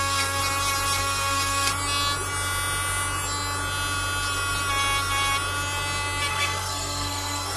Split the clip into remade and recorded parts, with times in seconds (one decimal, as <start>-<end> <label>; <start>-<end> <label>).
0.0-0.4 remade; 0.4-1.0 recorded; 1.0-1.7 remade; 1.7-6.3 recorded; 6.3-7.6 remade